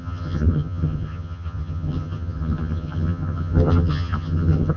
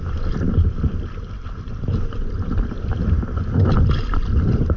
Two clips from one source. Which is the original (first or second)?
second